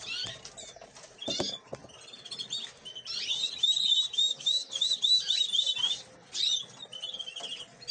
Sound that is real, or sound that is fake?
real